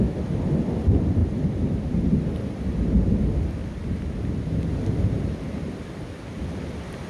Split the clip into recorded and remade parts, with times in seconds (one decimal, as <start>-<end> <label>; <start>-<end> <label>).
0.0-1.2 recorded; 1.2-1.9 remade; 1.9-3.6 recorded; 3.6-5.8 remade; 5.8-7.1 recorded